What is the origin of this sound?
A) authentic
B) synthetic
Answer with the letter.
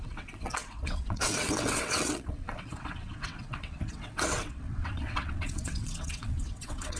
B